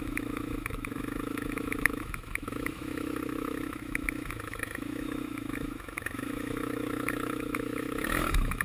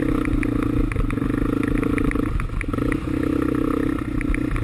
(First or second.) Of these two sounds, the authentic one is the second